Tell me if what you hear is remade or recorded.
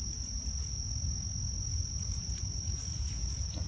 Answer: recorded